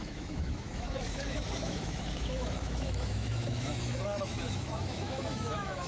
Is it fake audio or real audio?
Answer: fake